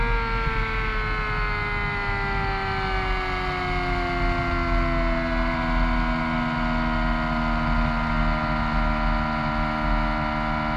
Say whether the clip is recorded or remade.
recorded